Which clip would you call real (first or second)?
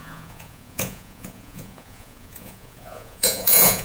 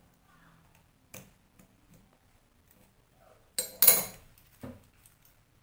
second